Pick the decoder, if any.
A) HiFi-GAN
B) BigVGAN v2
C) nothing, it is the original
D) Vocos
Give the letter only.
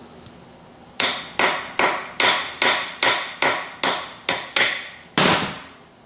C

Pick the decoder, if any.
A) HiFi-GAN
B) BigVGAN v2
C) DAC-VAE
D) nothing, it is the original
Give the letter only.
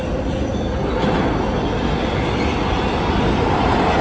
D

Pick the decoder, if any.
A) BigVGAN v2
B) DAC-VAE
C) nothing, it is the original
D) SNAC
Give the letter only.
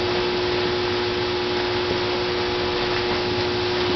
C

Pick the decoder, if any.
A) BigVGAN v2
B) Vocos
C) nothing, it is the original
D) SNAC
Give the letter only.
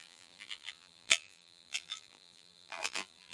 A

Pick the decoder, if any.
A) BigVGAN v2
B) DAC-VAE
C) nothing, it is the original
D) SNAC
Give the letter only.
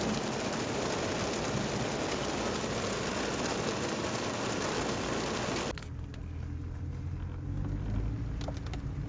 C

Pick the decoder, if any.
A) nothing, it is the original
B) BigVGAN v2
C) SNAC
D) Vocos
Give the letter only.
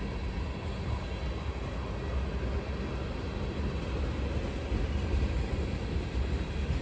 A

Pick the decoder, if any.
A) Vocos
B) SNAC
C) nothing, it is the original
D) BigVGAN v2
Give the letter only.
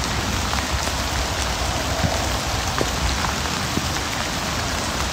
C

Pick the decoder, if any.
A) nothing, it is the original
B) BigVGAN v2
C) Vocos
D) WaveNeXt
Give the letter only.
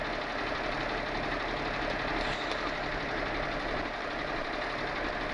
A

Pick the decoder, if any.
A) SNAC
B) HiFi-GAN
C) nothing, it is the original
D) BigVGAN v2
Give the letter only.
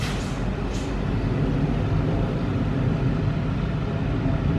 C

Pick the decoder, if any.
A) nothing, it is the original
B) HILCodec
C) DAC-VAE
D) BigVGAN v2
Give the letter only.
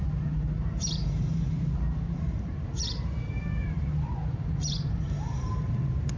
D